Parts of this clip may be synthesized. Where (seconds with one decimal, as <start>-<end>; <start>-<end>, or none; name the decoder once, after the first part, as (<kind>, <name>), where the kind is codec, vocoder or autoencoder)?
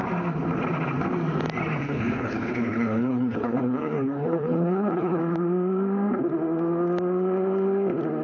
1.8-5.2 (codec, HILCodec)